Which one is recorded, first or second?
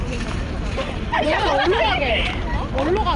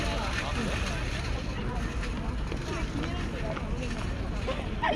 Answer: second